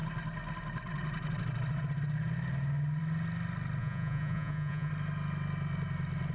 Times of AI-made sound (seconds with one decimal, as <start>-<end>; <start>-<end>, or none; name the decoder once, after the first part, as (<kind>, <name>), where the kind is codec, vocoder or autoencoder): 3.8-4.9 (vocoder, Vocos)

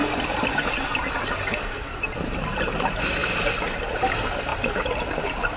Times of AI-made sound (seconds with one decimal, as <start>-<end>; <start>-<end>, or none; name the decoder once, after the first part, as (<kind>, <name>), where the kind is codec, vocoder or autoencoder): 1.5-2.0 (codec, SNAC)

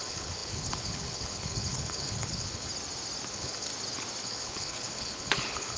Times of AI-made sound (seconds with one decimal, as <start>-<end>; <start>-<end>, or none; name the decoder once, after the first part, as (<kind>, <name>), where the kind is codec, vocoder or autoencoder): 0.0-2.7 (codec, HILCodec); 3.3-3.7; 4.2-5.8

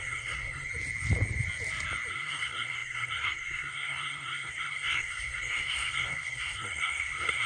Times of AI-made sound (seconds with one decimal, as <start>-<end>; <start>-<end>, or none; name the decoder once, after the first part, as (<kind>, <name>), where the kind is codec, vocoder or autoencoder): 0.0-0.7 (codec, SNAC); 2.1-7.5

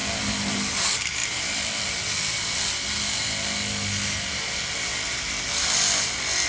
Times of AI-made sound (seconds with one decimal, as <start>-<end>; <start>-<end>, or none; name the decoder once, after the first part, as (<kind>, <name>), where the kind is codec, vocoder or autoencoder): none

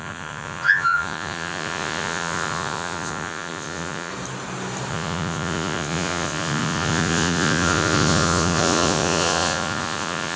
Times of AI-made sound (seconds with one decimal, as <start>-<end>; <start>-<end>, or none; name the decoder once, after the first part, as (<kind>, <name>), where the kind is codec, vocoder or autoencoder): 0.0-4.1 (vocoder, Vocos); 4.9-10.4

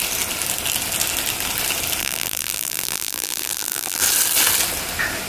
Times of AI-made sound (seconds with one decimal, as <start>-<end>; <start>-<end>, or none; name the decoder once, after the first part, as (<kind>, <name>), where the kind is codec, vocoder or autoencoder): 2.0-4.0 (vocoder, BigVGAN v2)

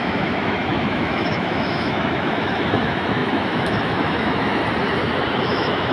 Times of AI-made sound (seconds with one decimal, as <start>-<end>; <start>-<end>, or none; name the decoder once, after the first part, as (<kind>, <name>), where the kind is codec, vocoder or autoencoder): 0.0-4.6 (autoencoder, DAC-VAE); 5.5-5.9